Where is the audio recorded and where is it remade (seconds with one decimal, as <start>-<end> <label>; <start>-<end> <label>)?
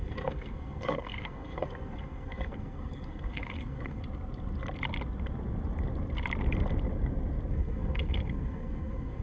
0.0-4.0 remade; 4.0-7.5 recorded; 7.5-9.2 remade